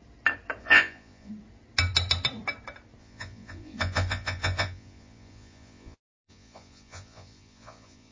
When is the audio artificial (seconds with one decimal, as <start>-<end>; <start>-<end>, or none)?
0.6-1.3; 3.0-8.1